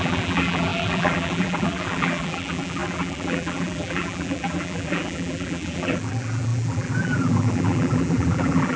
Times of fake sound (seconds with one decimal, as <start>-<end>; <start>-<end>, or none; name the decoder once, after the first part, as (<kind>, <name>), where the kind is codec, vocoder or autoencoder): 0.0-8.8 (vocoder, BigVGAN v2)